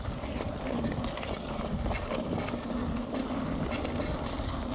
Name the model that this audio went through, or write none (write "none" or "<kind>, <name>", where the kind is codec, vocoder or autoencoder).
none